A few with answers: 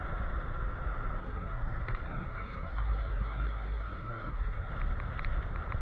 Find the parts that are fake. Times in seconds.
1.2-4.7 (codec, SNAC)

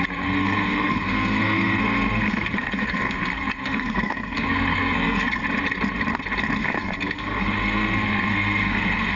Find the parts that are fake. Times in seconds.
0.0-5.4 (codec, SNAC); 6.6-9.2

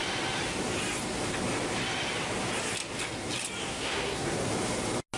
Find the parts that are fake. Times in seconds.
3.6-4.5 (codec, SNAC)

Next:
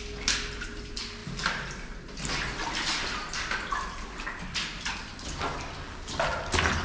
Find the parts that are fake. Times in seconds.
none